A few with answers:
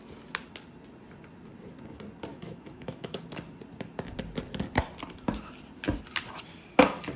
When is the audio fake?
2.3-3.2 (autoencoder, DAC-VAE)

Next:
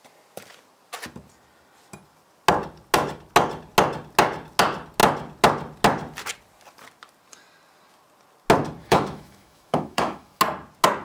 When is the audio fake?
8.8-10.4 (autoencoder, DAC-VAE)

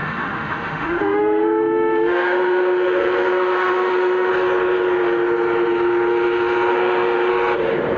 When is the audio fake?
0.0-4.3 (autoencoder, DAC-VAE); 6.7-7.3